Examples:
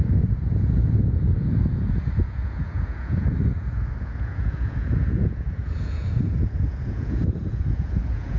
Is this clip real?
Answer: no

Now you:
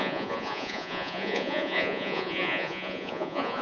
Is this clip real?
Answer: no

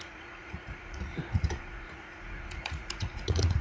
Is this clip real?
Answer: no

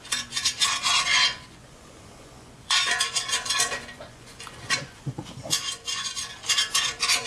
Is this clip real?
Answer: no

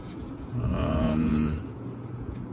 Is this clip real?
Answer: no